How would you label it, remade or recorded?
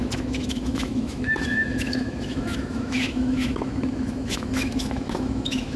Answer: remade